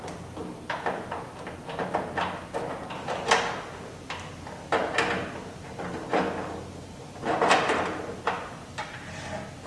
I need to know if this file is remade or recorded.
recorded